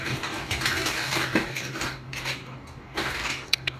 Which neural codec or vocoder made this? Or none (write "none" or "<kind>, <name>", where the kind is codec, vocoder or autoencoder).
codec, DAC